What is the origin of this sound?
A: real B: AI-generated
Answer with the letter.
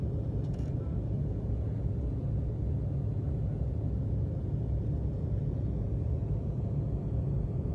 B